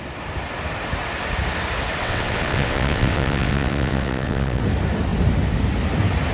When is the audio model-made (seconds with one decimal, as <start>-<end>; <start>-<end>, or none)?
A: 2.0-4.6